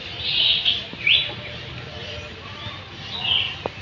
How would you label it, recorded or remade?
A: recorded